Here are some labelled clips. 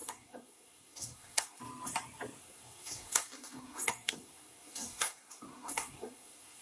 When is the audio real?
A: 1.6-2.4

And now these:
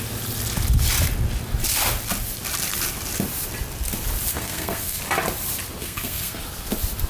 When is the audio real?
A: 0.0-4.3; 5.0-5.8; 6.4-7.1

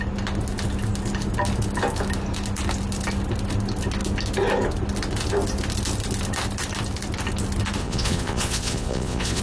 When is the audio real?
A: 0.0-7.8

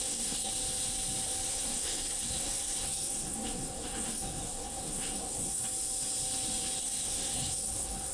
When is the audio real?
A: 0.5-1.5; 5.6-6.8

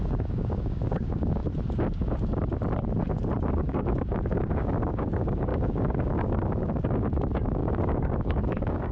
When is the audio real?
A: 1.4-3.5